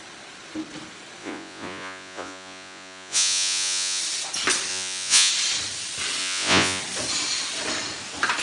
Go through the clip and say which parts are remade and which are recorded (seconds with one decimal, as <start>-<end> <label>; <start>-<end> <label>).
0.0-1.2 recorded; 1.2-4.0 remade; 4.0-4.7 recorded; 4.7-5.3 remade; 5.3-6.2 recorded; 6.2-6.8 remade; 6.8-8.4 recorded